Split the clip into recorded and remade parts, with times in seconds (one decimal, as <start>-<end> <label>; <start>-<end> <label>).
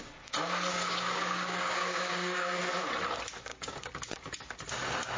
0.0-0.7 recorded; 0.7-2.6 remade; 2.6-3.5 recorded; 3.5-4.1 remade; 4.1-5.2 recorded